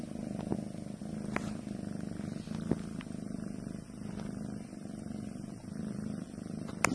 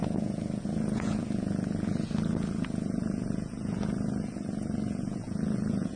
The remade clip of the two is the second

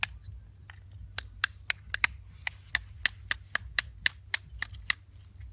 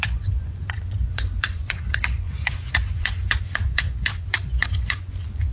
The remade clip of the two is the second